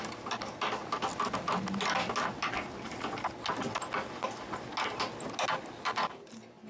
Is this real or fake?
real